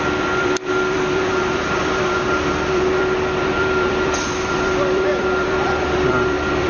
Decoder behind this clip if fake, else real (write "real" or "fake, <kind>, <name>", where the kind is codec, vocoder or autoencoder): fake, vocoder, BigVGAN v2